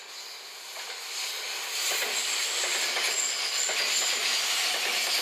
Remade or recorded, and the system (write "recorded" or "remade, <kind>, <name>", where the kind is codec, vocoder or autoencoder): recorded